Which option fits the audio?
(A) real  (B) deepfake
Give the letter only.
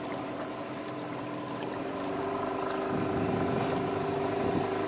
A